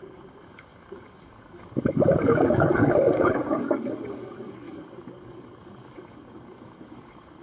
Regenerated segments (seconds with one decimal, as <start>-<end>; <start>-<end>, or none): 0.0-7.4